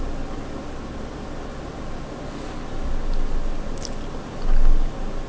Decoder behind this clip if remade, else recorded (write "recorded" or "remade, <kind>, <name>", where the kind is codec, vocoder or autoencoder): recorded